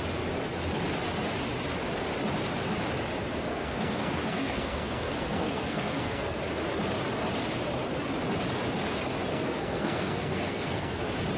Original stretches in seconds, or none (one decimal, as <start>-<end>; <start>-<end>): 0.0-3.5; 6.4-9.3; 11.0-11.4